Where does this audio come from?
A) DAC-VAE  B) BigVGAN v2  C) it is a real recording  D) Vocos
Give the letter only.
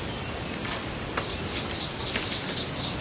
C